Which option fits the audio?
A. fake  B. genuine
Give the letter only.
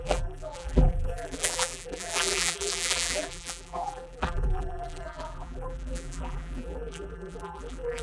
A